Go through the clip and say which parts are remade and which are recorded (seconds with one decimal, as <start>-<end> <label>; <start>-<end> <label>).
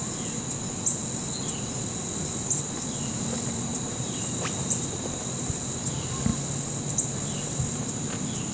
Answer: 0.0-3.7 recorded; 3.7-5.0 remade; 5.0-8.5 recorded